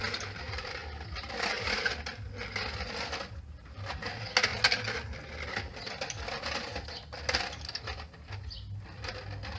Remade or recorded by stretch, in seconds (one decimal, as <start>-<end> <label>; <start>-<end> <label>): 0.0-9.6 recorded